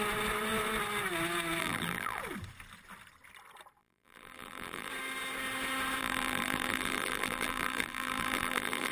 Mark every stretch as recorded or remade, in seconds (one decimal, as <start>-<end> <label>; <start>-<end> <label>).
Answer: 0.0-1.6 recorded; 1.6-2.2 remade; 2.2-3.8 recorded; 3.8-4.9 remade; 4.9-6.0 recorded; 6.0-8.9 remade